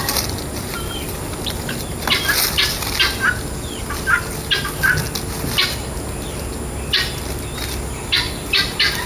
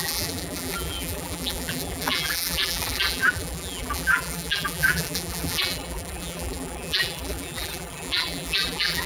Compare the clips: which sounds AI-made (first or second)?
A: second